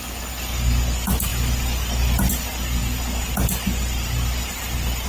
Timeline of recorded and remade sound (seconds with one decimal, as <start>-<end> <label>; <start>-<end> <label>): 0.0-5.1 recorded